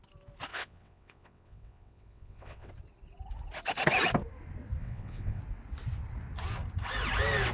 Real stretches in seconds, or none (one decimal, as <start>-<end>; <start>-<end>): 0.0-0.5; 2.7-4.8; 5.4-7.5